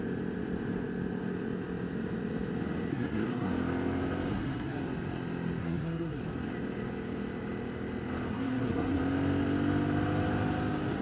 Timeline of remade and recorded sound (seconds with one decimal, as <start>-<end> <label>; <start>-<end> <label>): 0.0-2.9 recorded; 2.9-3.5 remade; 3.5-4.3 recorded; 4.3-4.8 remade; 4.8-5.6 recorded; 5.6-6.2 remade; 6.2-8.3 recorded; 8.3-9.0 remade; 9.0-11.0 recorded